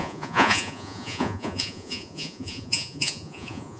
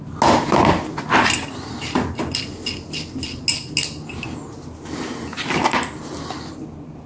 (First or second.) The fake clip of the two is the first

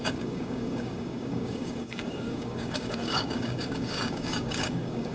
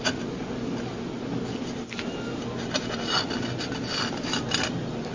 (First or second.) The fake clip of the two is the first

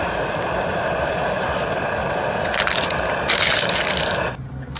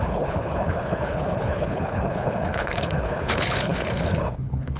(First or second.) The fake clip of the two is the second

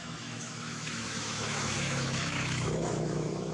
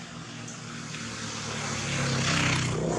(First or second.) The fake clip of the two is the first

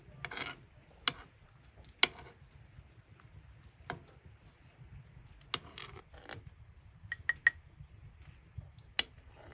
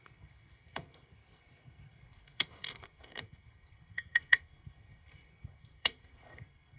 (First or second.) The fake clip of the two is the second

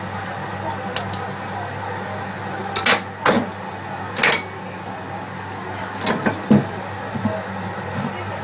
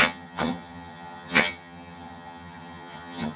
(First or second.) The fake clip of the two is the second